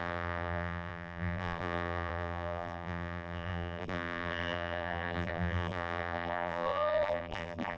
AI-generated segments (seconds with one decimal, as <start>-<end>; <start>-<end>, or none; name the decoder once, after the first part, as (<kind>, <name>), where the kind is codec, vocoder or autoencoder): 0.0-7.8 (vocoder, BigVGAN v2)